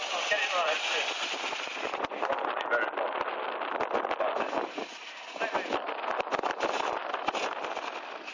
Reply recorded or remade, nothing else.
recorded